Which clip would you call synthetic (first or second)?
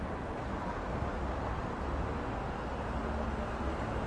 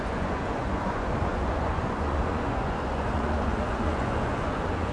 second